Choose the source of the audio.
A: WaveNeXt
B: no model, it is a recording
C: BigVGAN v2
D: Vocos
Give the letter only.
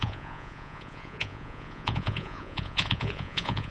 D